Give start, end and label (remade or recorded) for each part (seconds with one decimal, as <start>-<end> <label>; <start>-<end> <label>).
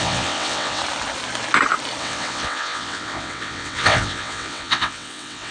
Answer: 0.0-0.8 remade; 0.8-2.0 recorded; 2.0-5.5 remade